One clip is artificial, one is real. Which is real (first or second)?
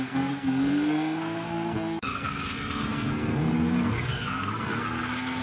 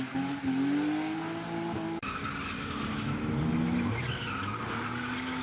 second